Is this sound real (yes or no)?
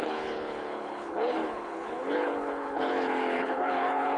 no